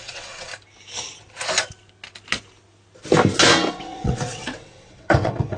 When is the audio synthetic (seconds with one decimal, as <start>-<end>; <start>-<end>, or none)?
0.0-0.5; 3.7-5.6